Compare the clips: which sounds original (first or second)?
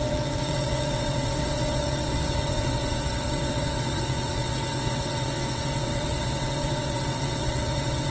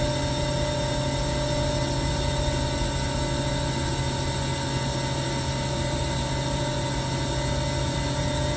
second